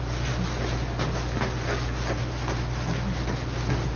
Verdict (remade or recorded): recorded